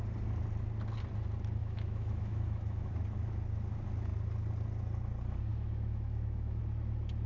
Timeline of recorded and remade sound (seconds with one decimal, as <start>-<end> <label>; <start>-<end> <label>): 0.0-1.6 recorded; 1.6-3.0 remade; 3.0-5.5 recorded; 5.5-6.6 remade; 6.6-7.3 recorded

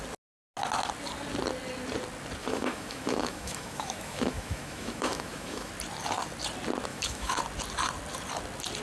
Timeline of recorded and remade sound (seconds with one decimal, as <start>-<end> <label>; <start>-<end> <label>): 0.0-2.4 recorded; 2.4-5.7 remade; 5.7-6.9 recorded; 6.9-7.4 remade; 7.4-8.8 recorded

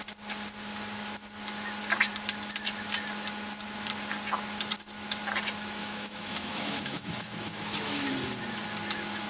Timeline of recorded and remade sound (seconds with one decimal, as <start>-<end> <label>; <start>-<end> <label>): 0.0-5.8 recorded; 5.8-8.1 remade; 8.1-9.3 recorded

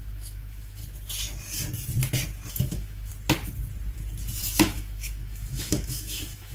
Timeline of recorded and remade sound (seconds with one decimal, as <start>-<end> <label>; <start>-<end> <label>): 0.0-0.8 remade; 0.8-2.5 recorded; 2.5-3.1 remade; 3.1-4.4 recorded; 4.4-6.5 remade

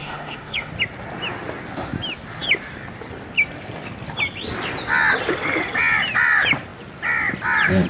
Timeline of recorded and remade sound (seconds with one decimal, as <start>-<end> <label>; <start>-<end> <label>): 0.0-0.7 remade; 0.7-7.9 recorded